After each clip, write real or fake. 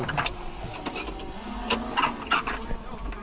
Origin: real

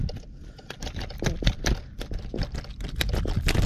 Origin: real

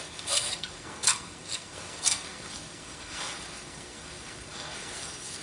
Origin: fake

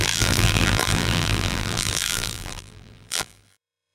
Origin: fake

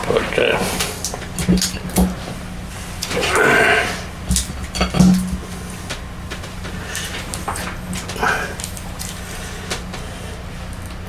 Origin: real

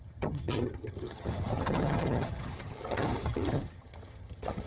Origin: fake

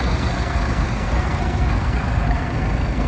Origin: fake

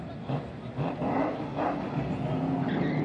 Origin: real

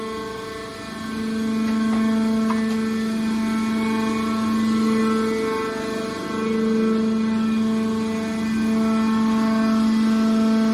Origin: real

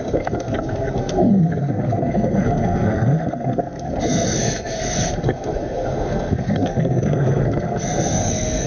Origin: fake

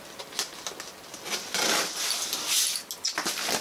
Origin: real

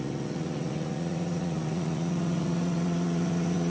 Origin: fake